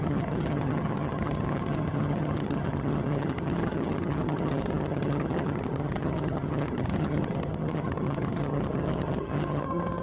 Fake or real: fake